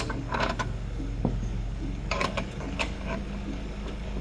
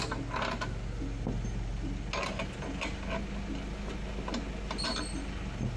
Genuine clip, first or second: second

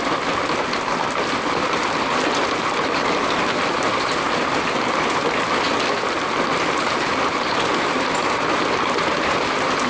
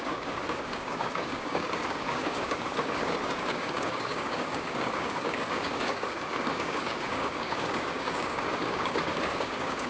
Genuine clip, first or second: first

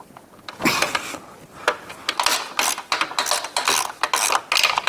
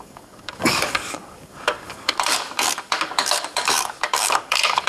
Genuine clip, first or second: first